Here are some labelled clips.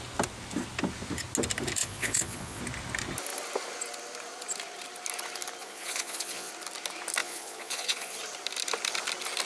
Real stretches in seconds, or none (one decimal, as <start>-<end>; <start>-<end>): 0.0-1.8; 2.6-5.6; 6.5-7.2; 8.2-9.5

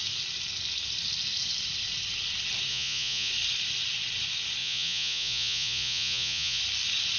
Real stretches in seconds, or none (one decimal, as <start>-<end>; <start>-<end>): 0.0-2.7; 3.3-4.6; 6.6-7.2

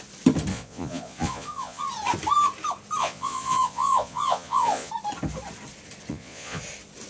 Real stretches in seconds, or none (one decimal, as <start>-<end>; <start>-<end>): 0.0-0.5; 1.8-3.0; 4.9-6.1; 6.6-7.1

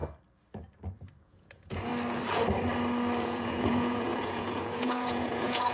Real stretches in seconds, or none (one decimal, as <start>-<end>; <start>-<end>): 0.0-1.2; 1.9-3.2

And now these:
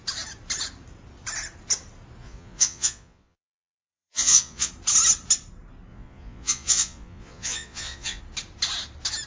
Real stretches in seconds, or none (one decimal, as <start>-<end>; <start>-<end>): 0.0-2.2; 4.7-5.9; 8.2-9.3

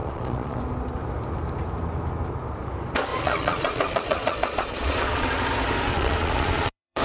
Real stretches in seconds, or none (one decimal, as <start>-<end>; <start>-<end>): 0.6-3.1; 5.5-5.9

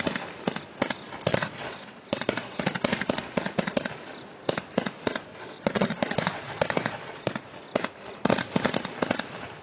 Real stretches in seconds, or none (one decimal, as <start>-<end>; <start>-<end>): 0.0-1.3; 2.6-5.3; 7.4-9.6

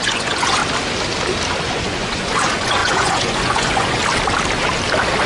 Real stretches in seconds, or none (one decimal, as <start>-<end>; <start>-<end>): 0.6-1.7; 4.0-5.3